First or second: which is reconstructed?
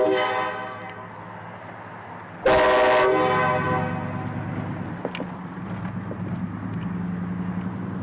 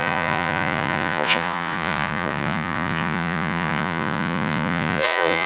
second